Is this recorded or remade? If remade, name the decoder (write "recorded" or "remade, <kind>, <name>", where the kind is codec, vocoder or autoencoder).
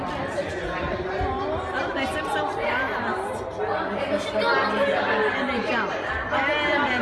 recorded